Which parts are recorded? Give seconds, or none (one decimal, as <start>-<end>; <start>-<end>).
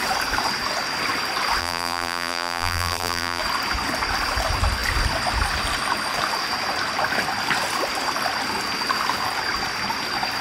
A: 0.0-1.6; 3.4-10.4